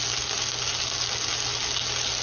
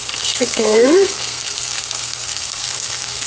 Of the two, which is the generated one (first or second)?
second